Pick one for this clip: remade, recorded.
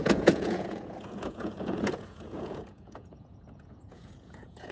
remade